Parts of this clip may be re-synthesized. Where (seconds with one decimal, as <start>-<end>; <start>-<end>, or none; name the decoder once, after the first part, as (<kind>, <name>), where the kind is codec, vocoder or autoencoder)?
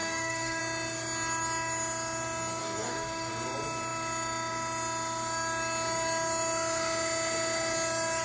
0.0-0.6 (codec, DAC); 2.6-3.3